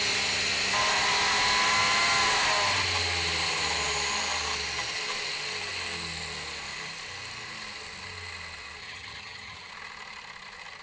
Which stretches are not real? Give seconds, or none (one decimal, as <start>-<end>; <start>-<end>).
8.8-9.7